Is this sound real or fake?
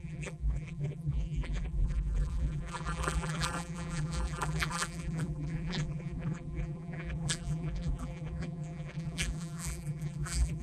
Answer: fake